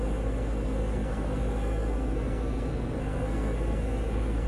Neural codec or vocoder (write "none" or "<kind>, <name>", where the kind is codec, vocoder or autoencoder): codec, SNAC